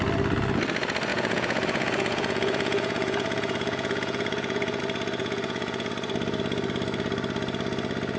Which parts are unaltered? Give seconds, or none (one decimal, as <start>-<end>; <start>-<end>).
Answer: 0.0-1.1; 4.8-5.2; 5.9-8.2